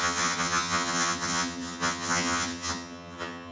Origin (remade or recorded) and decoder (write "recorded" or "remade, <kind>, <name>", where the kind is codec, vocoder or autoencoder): remade, vocoder, HiFi-GAN